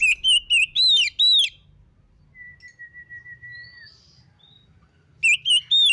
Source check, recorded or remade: recorded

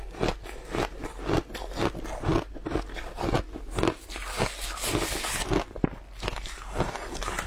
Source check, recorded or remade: recorded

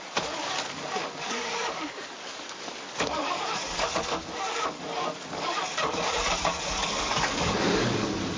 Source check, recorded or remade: remade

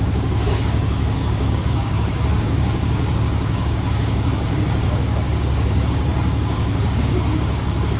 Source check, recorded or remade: remade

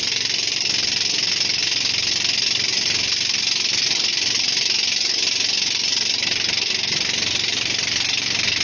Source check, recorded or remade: recorded